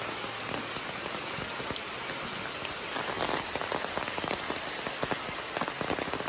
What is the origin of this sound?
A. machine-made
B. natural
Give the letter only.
B